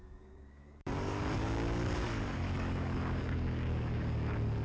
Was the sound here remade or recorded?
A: remade